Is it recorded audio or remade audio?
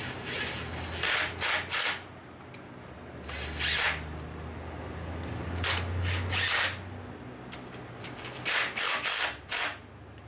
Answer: recorded